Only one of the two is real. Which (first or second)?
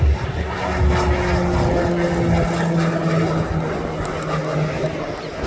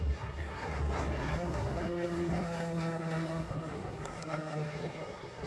first